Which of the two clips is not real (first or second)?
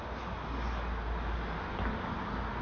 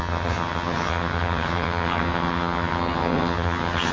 second